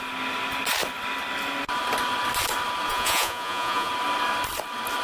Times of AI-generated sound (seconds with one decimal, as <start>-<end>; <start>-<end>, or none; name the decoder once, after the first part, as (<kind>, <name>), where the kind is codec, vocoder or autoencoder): 2.9-3.9 (vocoder, Vocos)